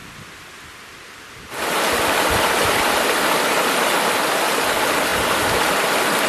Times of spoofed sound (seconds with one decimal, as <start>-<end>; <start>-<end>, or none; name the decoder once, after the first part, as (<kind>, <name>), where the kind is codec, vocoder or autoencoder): 0.0-3.8 (vocoder, BigVGAN v2); 5.1-5.8